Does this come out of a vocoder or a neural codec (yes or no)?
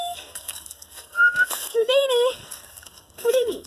yes